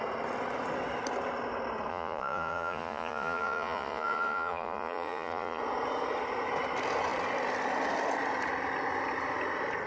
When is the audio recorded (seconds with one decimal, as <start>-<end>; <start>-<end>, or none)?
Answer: 0.0-1.9; 5.6-9.9